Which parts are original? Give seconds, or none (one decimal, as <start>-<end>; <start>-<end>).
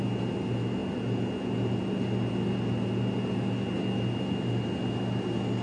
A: 0.0-5.6